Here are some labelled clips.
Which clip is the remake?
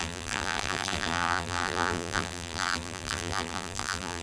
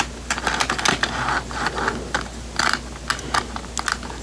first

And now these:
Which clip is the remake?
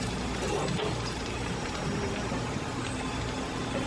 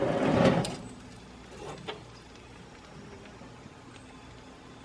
first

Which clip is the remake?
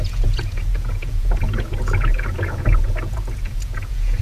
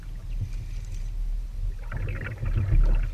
first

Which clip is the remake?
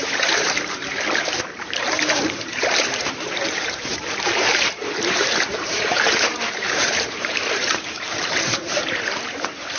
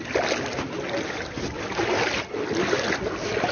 first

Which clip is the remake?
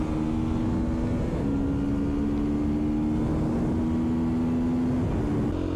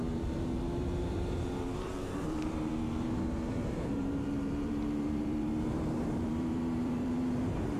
second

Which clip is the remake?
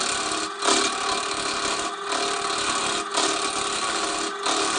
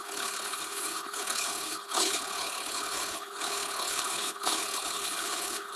second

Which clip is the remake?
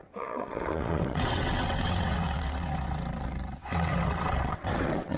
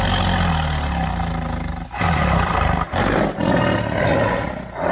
first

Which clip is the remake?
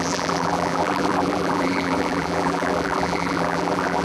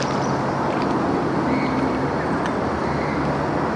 first